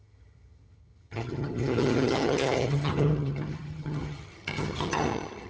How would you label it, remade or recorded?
remade